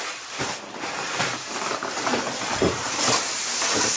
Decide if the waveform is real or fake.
real